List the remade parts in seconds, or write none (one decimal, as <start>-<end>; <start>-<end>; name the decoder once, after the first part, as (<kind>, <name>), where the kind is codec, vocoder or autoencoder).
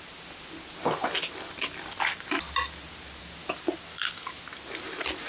3.9-4.4 (autoencoder, DAC-VAE)